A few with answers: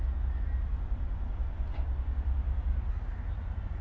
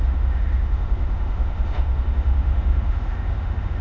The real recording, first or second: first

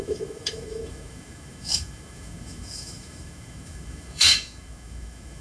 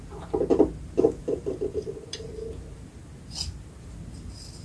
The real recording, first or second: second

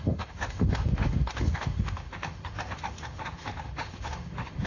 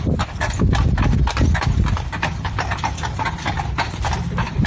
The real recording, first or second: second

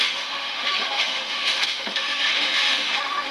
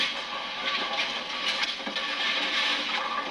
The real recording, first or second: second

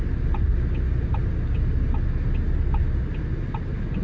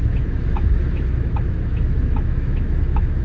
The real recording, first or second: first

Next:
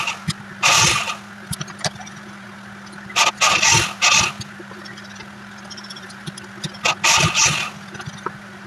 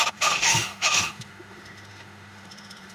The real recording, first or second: first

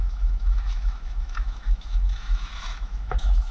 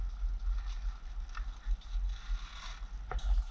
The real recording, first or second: second